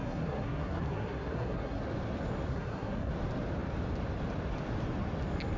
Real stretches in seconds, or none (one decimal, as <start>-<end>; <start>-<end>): 1.8-2.5; 3.1-5.6